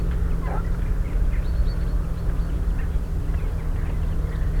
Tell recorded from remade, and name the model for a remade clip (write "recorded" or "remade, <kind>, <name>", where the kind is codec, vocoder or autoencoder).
recorded